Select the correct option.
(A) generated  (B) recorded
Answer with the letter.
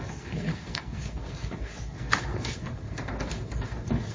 A